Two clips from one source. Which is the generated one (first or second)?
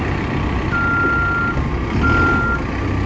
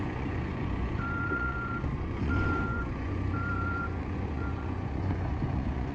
second